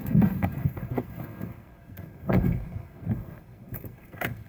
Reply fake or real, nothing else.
fake